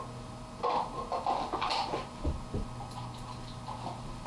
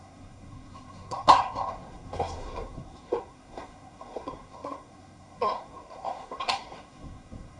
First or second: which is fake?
second